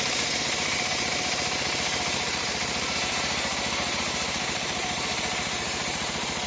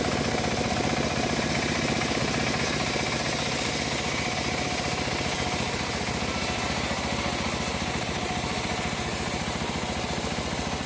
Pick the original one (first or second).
second